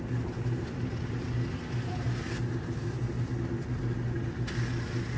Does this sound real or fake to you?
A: real